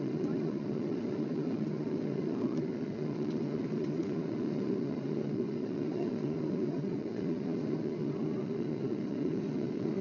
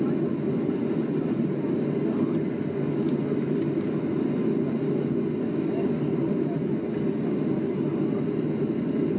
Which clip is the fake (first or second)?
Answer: first